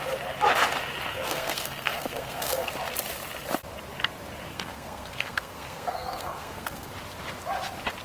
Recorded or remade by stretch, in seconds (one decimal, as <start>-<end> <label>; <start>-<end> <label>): 0.0-1.1 recorded; 1.1-2.7 remade; 2.7-4.5 recorded; 4.5-6.9 remade; 6.9-8.0 recorded